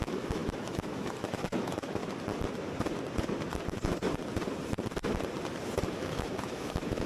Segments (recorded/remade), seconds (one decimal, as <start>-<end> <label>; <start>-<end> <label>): 0.0-2.0 remade; 2.0-5.9 recorded; 5.9-7.1 remade